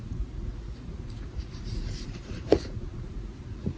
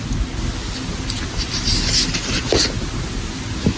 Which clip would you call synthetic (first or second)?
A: first